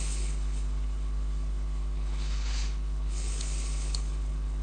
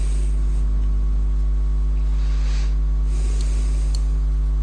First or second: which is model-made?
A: first